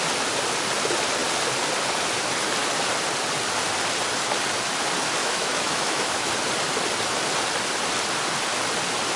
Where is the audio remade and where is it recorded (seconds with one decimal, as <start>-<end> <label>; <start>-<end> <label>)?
0.0-5.2 recorded; 5.2-6.3 remade; 6.3-9.2 recorded

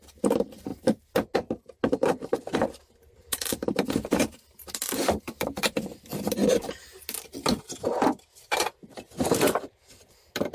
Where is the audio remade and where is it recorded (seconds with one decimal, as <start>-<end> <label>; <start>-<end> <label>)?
0.0-10.5 recorded

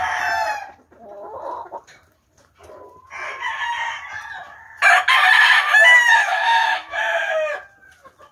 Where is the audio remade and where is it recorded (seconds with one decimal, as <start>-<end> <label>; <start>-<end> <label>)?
0.0-6.2 recorded; 6.2-7.3 remade; 7.3-8.3 recorded

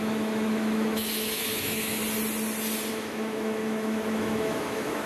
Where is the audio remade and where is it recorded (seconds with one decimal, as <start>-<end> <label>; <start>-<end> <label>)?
0.0-2.0 remade; 2.0-2.9 recorded; 2.9-5.1 remade

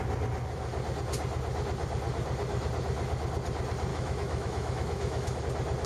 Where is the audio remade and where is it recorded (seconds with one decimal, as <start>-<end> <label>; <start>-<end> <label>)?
0.0-3.9 recorded; 3.9-5.4 remade; 5.4-5.9 recorded